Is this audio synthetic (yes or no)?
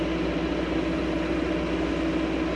no